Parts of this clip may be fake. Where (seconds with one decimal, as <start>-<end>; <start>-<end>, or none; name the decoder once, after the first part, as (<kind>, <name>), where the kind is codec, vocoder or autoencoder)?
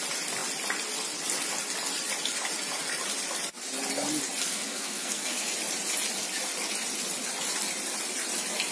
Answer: 4.5-5.5 (codec, SNAC)